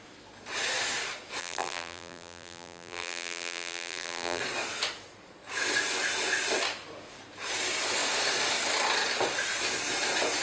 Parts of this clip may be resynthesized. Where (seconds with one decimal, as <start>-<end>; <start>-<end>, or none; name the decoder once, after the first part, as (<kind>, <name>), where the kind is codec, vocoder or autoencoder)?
1.4-4.4 (vocoder, BigVGAN v2)